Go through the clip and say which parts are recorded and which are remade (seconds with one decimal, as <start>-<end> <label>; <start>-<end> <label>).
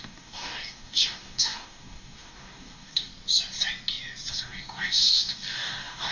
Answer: 0.0-3.1 remade; 3.1-4.3 recorded; 4.3-6.1 remade